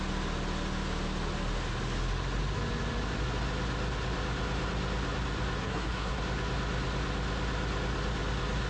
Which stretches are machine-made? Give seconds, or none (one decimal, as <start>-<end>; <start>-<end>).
5.6-6.2